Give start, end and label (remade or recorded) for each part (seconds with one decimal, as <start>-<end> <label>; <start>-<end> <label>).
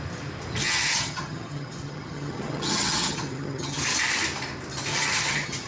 0.0-0.6 recorded; 0.6-3.8 remade; 3.8-4.9 recorded; 4.9-5.7 remade